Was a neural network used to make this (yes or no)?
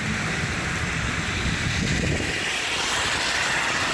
no